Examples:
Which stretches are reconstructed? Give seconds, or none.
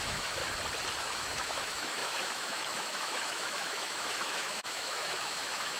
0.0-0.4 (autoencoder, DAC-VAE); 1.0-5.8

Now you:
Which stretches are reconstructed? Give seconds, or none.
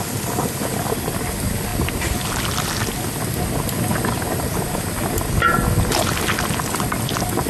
none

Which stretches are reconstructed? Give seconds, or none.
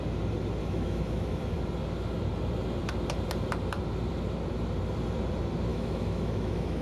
0.6-1.6 (autoencoder, DAC-VAE); 5.7-6.8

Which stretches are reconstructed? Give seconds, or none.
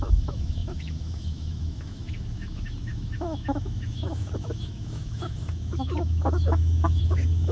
0.0-7.5 (autoencoder, DAC-VAE)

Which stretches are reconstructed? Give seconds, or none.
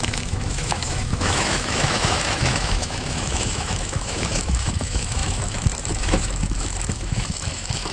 0.0-7.9 (autoencoder, DAC-VAE)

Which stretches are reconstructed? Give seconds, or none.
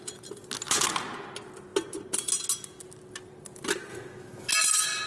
3.9-4.5 (autoencoder, DAC-VAE)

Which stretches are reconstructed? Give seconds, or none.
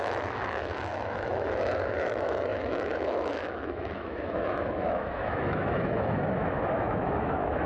0.0-7.7 (autoencoder, DAC-VAE)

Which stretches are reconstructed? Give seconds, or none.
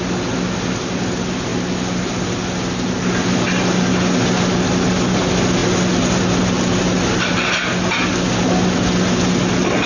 none